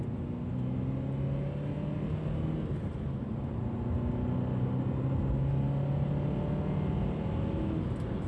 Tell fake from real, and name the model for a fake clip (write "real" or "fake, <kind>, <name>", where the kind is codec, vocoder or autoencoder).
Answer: real